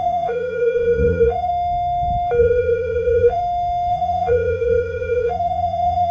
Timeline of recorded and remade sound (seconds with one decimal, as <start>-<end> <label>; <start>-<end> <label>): 0.0-1.5 remade; 1.5-2.4 recorded; 2.4-3.4 remade; 3.4-3.9 recorded; 3.9-6.1 remade